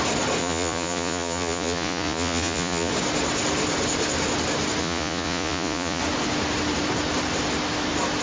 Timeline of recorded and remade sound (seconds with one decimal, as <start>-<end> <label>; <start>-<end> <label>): 0.0-0.4 recorded; 0.4-2.9 remade; 2.9-4.8 recorded; 4.8-6.0 remade; 6.0-8.2 recorded